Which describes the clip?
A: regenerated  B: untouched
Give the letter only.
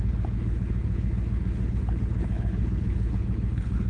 A